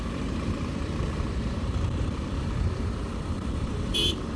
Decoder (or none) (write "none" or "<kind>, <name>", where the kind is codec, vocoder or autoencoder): vocoder, BigVGAN v2